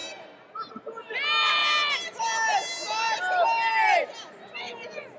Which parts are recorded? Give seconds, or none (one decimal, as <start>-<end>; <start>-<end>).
0.0-5.2